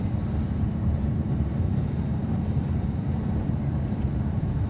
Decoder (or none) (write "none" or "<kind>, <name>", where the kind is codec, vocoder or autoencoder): vocoder, BigVGAN v2